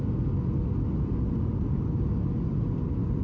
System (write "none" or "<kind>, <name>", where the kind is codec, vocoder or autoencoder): none